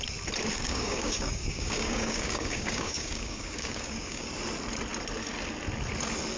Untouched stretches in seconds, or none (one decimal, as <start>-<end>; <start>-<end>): 0.0-0.5; 4.3-6.4